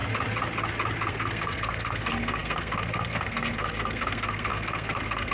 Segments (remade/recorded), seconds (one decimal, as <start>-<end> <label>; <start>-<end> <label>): 0.0-1.1 recorded; 1.1-5.3 remade